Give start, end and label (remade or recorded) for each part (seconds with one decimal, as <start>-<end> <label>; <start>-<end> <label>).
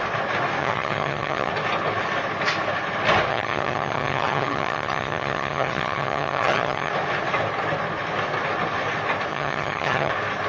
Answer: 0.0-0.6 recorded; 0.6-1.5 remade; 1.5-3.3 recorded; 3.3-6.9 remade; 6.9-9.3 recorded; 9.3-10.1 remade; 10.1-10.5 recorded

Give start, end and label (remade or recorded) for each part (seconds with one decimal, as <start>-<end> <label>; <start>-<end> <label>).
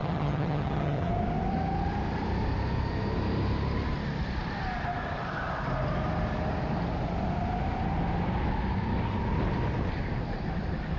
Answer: 0.0-1.1 remade; 1.1-11.0 recorded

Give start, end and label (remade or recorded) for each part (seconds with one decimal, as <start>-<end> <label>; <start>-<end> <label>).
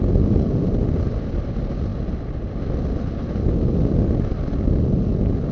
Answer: 0.0-5.5 recorded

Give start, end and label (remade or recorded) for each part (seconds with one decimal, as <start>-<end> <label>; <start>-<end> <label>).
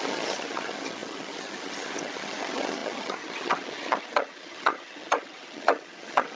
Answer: 0.0-6.3 remade